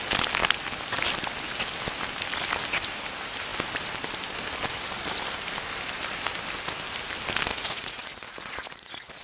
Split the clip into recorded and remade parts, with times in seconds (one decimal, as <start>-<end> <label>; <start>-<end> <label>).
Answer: 0.0-7.5 recorded; 7.5-9.2 remade